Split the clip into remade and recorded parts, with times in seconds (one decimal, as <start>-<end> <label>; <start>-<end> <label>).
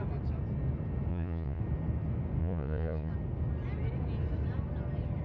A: 0.0-1.1 recorded; 1.1-1.6 remade; 1.6-2.4 recorded; 2.4-3.1 remade; 3.1-5.2 recorded